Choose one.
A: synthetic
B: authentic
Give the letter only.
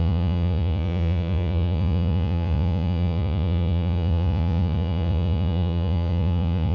A